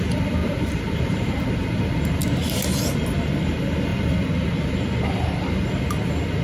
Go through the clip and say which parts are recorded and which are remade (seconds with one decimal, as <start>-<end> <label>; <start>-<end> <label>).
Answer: 0.0-0.4 recorded; 0.4-1.8 remade; 1.8-6.4 recorded